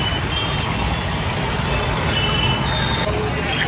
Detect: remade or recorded recorded